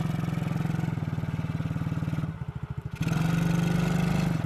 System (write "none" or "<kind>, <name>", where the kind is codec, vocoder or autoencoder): none